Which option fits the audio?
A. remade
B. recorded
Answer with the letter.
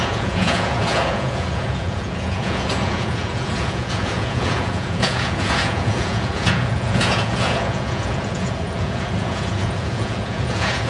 A